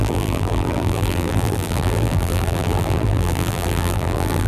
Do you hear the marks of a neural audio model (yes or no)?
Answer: yes